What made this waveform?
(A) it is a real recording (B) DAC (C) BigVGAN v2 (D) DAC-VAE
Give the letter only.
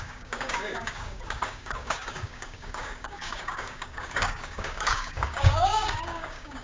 B